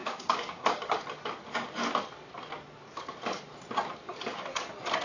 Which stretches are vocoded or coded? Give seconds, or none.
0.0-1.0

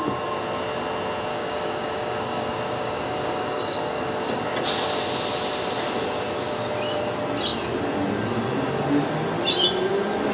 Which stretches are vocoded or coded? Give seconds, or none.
1.3-4.4